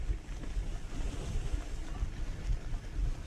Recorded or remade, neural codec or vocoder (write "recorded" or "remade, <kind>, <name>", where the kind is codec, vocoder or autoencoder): recorded